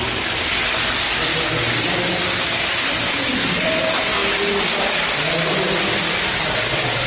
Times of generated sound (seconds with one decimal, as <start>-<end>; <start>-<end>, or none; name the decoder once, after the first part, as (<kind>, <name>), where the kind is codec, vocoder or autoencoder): none